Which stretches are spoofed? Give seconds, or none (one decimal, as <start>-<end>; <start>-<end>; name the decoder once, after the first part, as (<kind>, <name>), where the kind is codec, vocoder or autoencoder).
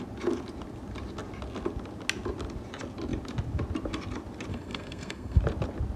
4.5-5.4 (codec, SNAC)